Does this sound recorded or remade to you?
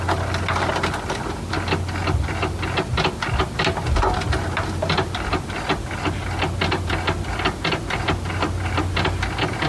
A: recorded